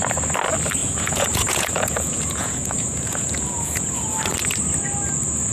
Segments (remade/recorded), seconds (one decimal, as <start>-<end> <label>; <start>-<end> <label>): 0.0-0.8 recorded; 0.8-4.1 remade; 4.1-5.5 recorded